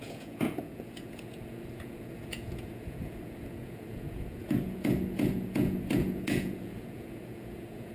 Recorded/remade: remade